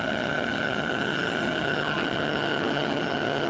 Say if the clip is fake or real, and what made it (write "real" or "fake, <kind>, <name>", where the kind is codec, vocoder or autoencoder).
fake, vocoder, HiFi-GAN